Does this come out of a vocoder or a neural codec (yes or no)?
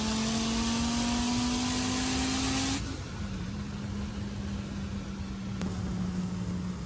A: no